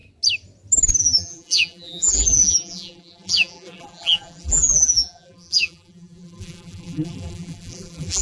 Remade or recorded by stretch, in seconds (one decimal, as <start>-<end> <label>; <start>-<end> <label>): 0.0-1.0 recorded; 1.0-8.2 remade